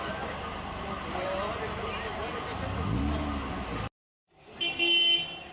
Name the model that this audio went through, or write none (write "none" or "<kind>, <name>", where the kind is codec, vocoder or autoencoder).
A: none